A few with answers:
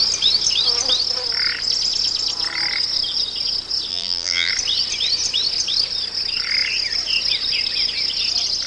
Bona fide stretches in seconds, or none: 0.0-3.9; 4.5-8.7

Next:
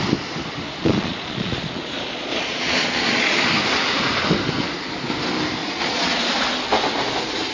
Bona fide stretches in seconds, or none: 0.0-0.7; 3.5-5.6; 6.2-7.5

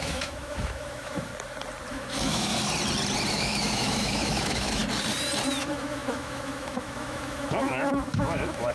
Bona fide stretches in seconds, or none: 1.3-1.9; 2.5-3.3; 4.8-5.6

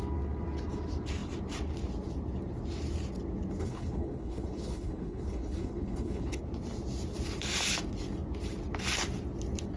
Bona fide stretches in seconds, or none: 0.0-3.6; 6.4-9.8

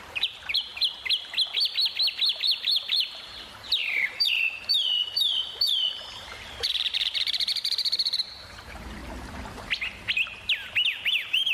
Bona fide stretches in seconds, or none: 0.7-2.4; 9.0-11.1

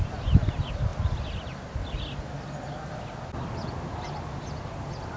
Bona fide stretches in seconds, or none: 0.0-5.2